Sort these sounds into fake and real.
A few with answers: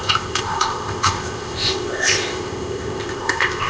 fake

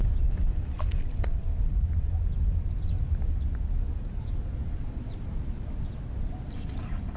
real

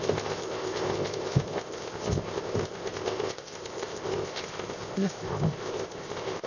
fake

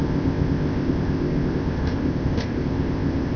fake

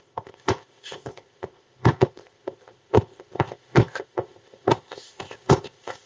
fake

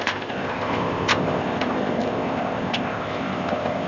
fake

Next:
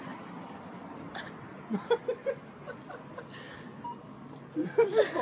real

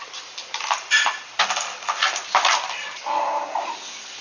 real